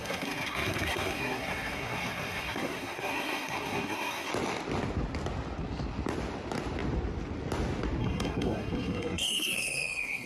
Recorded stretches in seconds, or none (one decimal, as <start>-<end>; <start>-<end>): 4.3-8.0